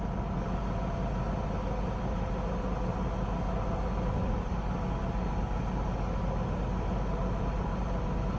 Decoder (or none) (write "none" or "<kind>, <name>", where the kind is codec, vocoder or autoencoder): none